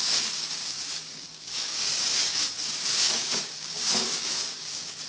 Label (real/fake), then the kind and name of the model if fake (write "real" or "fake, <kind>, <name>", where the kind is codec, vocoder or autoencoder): fake, codec, DAC